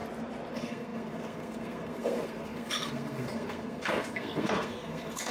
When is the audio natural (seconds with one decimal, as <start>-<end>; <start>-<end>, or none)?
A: 0.0-0.5